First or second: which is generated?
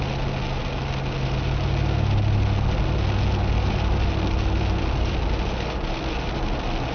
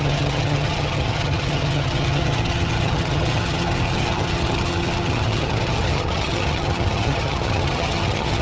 second